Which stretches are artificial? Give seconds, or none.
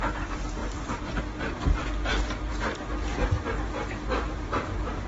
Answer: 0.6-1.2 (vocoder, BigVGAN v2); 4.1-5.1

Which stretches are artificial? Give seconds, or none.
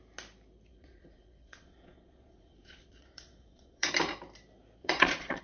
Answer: 0.7-3.9 (vocoder, Vocos); 4.8-5.4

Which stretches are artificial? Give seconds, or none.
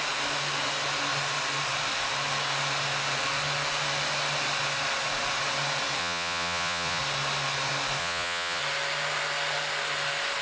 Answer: 6.0-7.0 (vocoder, Vocos); 8.0-8.6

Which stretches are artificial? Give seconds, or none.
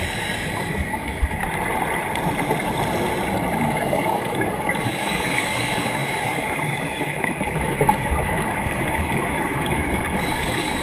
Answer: 0.0-1.4 (codec, DAC); 3.6-10.8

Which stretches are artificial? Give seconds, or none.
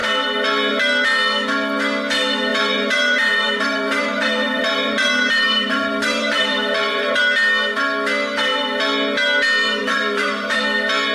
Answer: 2.5-7.2 (vocoder, BigVGAN v2); 9.8-10.6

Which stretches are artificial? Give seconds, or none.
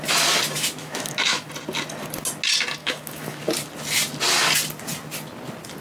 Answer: 0.8-1.5 (autoencoder, DAC-VAE); 2.8-3.4